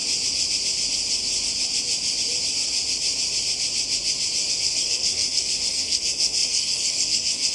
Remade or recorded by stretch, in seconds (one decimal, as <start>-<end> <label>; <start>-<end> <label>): 0.0-4.5 recorded; 4.5-7.5 remade